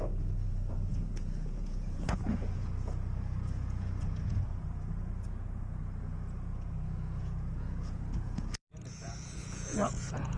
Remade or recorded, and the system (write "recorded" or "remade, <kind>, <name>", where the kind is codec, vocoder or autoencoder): remade, vocoder, Vocos